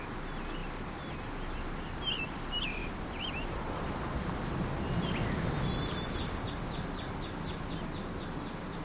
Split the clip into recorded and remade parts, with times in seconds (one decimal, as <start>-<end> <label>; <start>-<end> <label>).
0.0-8.8 recorded